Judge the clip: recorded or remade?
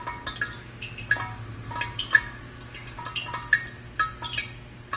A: recorded